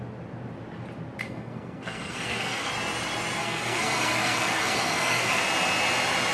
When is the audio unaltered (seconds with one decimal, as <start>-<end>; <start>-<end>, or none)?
0.0-1.2; 2.7-3.4; 5.4-6.3